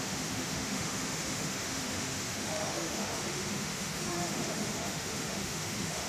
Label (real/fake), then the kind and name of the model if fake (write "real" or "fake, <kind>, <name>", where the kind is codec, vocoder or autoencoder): fake, autoencoder, DAC-VAE